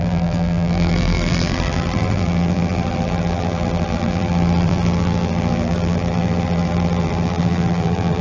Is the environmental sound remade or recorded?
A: remade